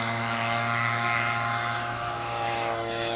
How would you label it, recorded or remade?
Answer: remade